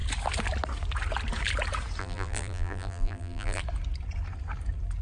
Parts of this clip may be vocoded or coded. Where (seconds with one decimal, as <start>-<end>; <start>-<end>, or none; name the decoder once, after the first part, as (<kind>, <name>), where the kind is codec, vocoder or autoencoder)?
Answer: 2.0-3.6 (vocoder, BigVGAN v2)